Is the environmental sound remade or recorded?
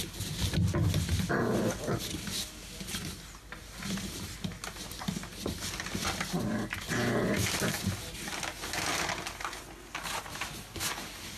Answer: recorded